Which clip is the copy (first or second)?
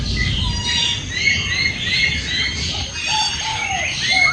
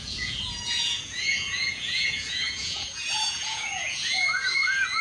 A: second